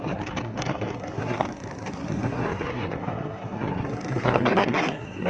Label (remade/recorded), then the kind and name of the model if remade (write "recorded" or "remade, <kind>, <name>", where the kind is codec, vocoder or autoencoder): remade, codec, SNAC